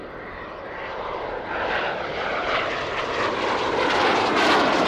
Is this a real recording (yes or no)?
yes